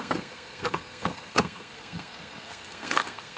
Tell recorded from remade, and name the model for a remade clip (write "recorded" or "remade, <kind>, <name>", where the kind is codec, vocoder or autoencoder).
remade, codec, SNAC